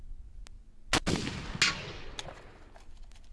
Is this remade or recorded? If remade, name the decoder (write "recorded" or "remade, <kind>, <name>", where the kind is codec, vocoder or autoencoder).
recorded